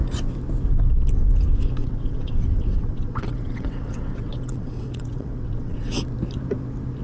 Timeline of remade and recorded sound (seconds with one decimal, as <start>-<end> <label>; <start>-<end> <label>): 0.0-1.8 recorded; 1.8-6.0 remade; 6.0-7.0 recorded